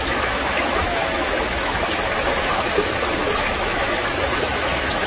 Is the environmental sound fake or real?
fake